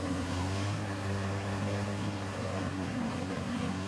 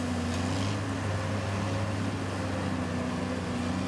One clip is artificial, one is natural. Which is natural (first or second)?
second